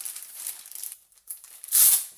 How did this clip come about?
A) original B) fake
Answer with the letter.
B